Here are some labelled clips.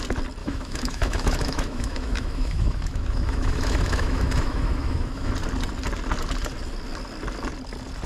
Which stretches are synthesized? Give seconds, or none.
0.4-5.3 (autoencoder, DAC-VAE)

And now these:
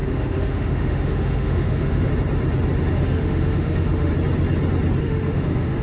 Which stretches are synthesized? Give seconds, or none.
0.0-2.1 (autoencoder, DAC-VAE); 2.9-4.1; 5.0-5.8

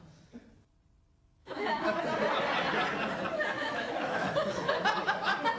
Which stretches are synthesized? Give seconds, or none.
1.4-2.0 (autoencoder, DAC-VAE); 3.6-4.7